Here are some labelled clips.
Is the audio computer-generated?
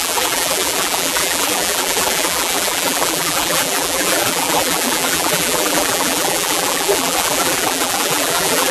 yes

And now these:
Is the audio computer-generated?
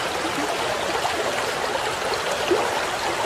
no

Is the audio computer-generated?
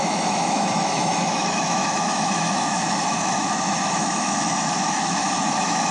yes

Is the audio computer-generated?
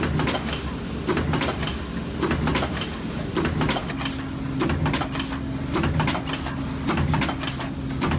no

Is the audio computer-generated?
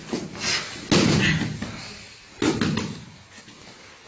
no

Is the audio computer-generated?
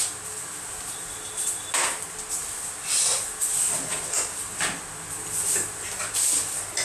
no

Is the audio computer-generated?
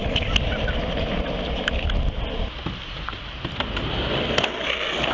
no